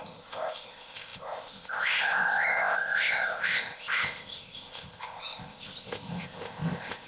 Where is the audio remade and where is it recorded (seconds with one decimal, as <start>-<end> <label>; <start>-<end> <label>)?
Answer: 0.0-7.1 remade